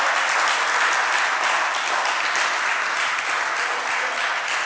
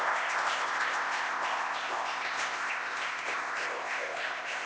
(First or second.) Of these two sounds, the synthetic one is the second